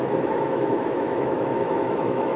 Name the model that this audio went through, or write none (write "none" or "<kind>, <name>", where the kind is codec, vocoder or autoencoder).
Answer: autoencoder, DAC-VAE